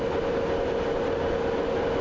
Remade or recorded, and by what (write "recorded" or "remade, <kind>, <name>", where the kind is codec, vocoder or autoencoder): recorded